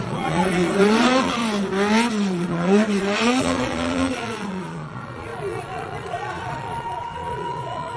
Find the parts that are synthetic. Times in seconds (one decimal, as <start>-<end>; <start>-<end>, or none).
0.0-1.4; 2.1-8.0